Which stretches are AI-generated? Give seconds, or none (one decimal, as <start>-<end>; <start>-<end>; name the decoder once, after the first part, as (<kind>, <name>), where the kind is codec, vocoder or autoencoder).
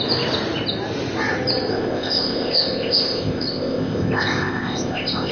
1.7-5.3 (codec, ZipCodec)